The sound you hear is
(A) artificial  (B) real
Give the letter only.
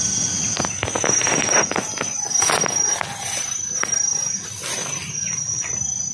B